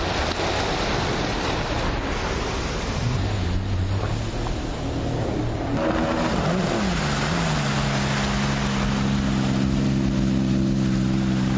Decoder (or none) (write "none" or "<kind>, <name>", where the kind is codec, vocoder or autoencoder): none